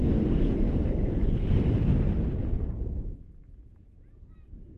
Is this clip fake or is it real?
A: real